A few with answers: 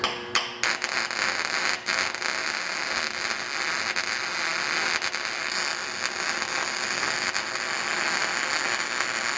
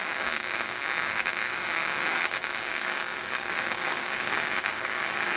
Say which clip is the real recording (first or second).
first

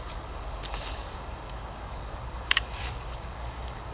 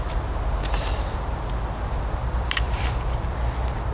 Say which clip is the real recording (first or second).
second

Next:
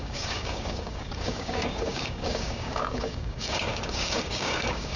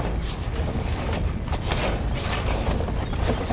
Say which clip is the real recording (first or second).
second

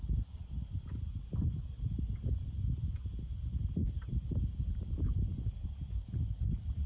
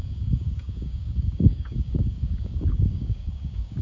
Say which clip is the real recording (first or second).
first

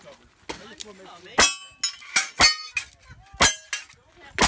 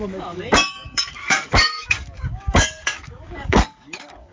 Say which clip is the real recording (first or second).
first